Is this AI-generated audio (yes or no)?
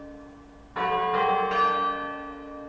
no